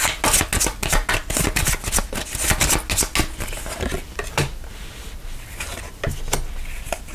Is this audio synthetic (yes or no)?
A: no